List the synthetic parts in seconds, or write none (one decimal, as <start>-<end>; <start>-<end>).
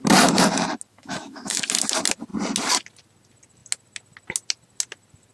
0.9-1.6